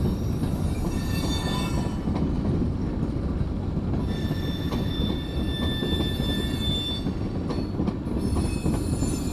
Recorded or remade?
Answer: recorded